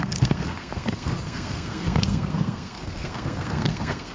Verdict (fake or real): fake